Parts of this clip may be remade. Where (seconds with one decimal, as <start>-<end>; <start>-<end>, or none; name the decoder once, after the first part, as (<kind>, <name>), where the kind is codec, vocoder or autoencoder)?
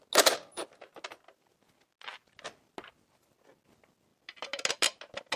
none